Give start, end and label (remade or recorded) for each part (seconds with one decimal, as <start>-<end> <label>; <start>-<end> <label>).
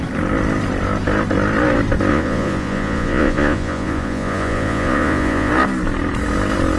0.0-2.1 recorded; 2.1-5.5 remade; 5.5-6.8 recorded